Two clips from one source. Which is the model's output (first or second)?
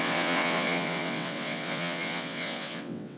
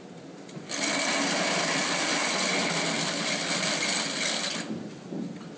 first